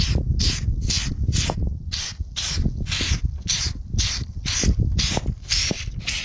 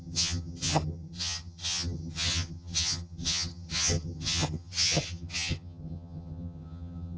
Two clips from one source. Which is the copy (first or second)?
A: second